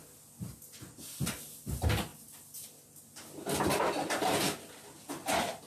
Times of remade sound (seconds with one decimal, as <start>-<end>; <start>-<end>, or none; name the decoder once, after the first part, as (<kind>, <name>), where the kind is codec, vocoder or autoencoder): none